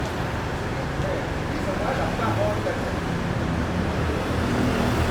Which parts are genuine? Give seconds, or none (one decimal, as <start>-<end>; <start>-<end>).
0.5-3.6